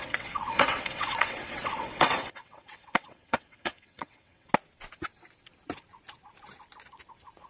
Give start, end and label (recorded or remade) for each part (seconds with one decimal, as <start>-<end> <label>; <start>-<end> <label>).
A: 0.0-4.5 remade; 4.5-7.5 recorded